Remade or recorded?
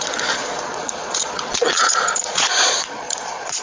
remade